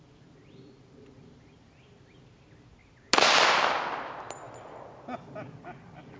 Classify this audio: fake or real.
real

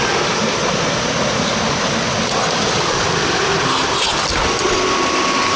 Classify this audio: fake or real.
real